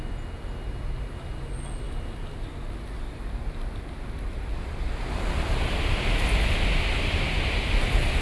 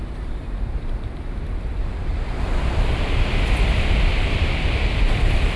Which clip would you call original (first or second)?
first